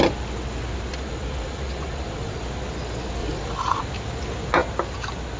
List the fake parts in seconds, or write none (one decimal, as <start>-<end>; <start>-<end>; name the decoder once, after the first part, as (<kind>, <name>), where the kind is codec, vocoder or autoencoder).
0.9-2.4 (vocoder, Vocos); 3.2-3.8